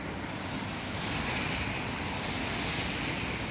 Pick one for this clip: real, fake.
real